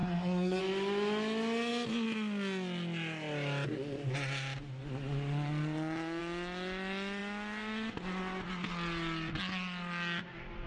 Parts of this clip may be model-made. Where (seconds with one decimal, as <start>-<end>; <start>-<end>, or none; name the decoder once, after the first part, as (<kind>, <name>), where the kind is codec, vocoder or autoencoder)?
0.0-0.6 (codec, SNAC)